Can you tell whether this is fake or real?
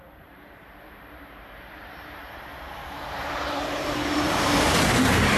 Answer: fake